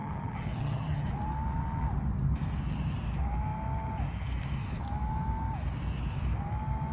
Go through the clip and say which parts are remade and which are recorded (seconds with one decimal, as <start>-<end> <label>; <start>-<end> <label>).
0.0-1.1 remade; 1.1-6.9 recorded